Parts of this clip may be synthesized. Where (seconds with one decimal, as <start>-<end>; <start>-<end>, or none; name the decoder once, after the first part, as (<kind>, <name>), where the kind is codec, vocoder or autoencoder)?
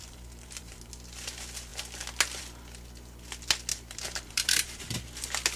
0.0-0.9 (vocoder, BigVGAN v2); 3.7-5.0